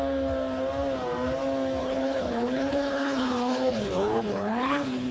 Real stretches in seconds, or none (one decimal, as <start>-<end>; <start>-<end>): 0.0-1.8